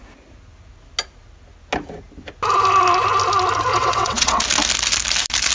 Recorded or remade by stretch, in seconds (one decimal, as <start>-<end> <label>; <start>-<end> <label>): 0.0-3.7 recorded; 3.7-4.4 remade; 4.4-5.5 recorded